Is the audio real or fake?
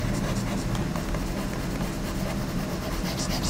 real